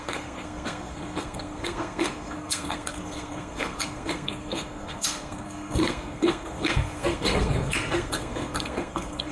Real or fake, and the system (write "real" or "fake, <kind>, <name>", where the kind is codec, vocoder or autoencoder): fake, codec, SNAC